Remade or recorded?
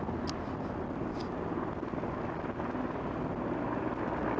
recorded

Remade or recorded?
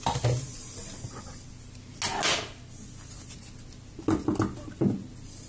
recorded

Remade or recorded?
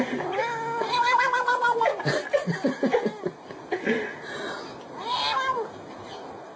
recorded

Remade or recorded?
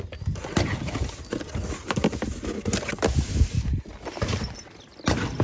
recorded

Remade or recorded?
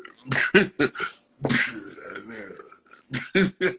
recorded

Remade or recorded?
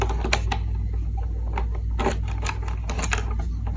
recorded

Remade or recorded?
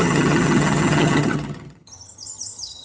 remade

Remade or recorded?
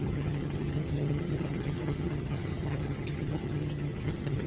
remade